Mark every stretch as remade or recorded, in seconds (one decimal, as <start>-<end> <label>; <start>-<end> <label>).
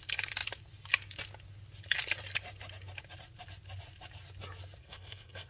0.0-4.8 recorded; 4.8-5.5 remade